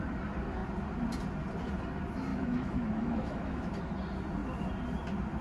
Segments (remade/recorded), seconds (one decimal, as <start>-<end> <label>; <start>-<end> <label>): 0.0-2.3 recorded; 2.3-3.9 remade; 3.9-5.4 recorded